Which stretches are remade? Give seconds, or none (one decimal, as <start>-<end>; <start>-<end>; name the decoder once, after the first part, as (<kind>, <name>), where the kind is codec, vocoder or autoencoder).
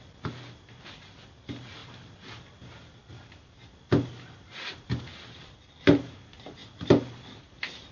none